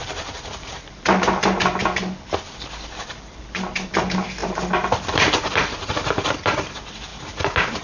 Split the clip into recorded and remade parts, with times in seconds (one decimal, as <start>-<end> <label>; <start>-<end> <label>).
0.0-7.1 remade; 7.1-7.8 recorded